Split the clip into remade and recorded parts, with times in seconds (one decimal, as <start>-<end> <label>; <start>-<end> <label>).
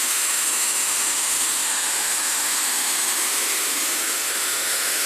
0.0-5.1 remade